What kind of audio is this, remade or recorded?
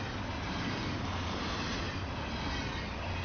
recorded